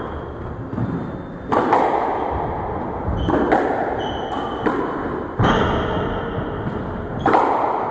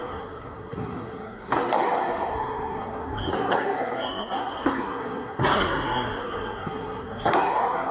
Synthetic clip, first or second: second